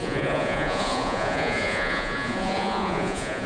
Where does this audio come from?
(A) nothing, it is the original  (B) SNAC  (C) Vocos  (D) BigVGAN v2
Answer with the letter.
C